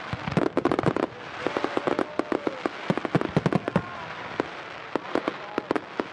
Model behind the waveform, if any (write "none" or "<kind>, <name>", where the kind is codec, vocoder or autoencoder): none